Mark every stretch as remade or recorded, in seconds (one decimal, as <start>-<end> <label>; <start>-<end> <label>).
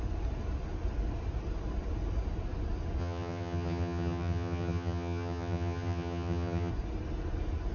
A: 0.0-3.0 recorded; 3.0-6.7 remade; 6.7-7.7 recorded